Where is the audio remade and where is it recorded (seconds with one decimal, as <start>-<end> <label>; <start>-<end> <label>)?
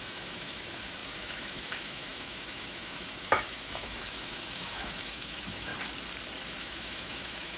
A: 0.0-5.7 remade; 5.7-6.6 recorded; 6.6-7.6 remade